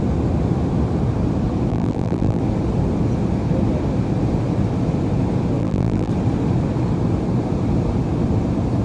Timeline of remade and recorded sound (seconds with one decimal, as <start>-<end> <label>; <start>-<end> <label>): 0.0-1.7 recorded; 1.7-2.4 remade; 2.4-5.6 recorded; 5.6-6.1 remade; 6.1-8.8 recorded